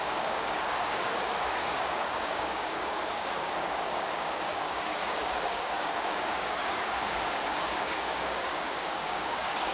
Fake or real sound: fake